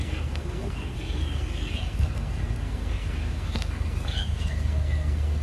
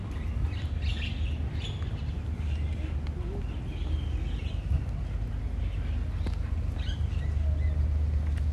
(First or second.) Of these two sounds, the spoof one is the first